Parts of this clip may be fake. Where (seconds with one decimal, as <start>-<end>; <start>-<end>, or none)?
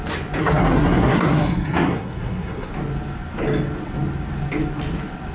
0.4-2.7